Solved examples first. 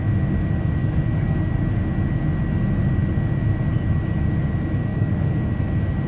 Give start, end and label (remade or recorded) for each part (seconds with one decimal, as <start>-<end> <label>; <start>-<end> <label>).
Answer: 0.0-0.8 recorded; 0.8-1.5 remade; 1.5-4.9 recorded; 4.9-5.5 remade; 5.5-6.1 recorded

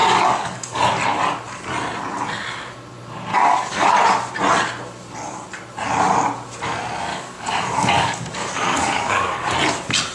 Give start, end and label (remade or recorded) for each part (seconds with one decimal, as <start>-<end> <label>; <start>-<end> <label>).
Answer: 0.0-0.8 remade; 0.8-3.3 recorded; 3.3-3.9 remade; 3.9-7.1 recorded; 7.1-9.5 remade; 9.5-10.1 recorded

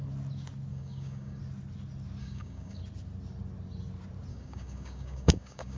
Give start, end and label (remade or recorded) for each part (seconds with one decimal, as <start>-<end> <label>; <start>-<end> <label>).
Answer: 0.0-0.7 recorded; 0.7-1.4 remade; 1.4-2.2 recorded; 2.2-2.8 remade; 2.8-4.3 recorded; 4.3-5.8 remade

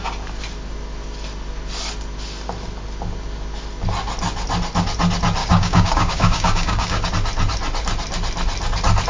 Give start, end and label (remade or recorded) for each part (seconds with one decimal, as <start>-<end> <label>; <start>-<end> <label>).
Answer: 0.0-5.4 recorded; 5.4-7.1 remade; 7.1-9.1 recorded